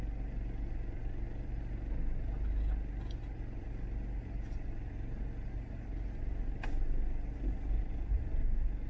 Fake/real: real